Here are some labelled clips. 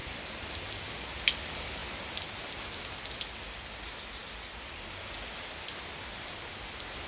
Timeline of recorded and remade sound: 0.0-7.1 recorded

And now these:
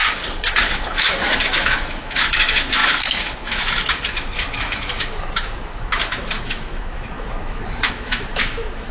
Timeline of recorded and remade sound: 0.0-0.6 recorded; 0.6-8.9 remade

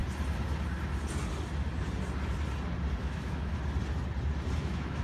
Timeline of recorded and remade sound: 0.0-3.0 recorded; 3.0-3.5 remade; 3.5-4.6 recorded; 4.6-5.0 remade

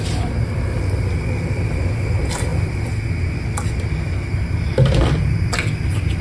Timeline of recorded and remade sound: 0.0-6.2 recorded

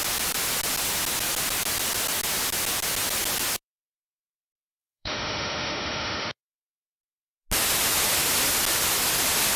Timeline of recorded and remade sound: 0.0-4.8 recorded; 4.8-6.4 remade; 6.4-9.6 recorded

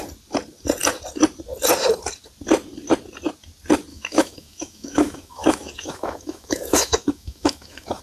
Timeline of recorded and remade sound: 0.0-3.9 recorded; 3.9-8.0 remade

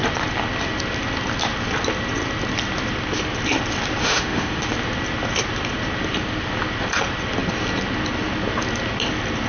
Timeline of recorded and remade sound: 0.0-4.0 recorded; 4.0-4.6 remade; 4.6-9.5 recorded